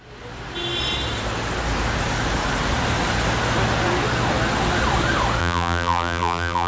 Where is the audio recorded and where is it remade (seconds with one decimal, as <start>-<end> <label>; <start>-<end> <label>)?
0.0-5.4 recorded; 5.4-6.7 remade